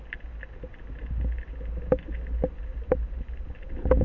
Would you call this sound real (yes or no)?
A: yes